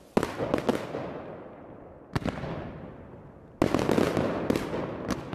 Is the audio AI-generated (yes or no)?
no